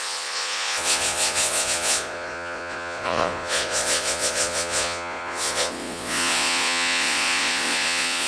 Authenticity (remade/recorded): remade